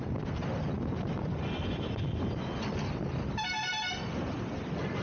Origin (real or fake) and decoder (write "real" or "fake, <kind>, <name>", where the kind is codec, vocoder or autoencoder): real